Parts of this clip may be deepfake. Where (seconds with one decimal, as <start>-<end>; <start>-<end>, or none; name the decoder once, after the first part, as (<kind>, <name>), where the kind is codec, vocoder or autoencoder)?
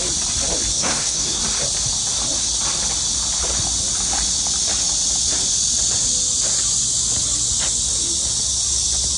0.7-1.4 (codec, SNAC)